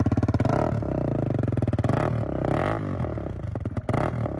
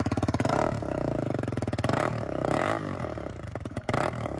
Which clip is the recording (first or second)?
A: first